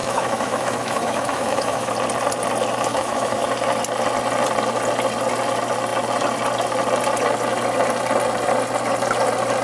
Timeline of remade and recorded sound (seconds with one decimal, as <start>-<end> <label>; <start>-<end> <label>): 0.0-1.9 remade; 1.9-2.9 recorded; 2.9-3.5 remade; 3.5-9.6 recorded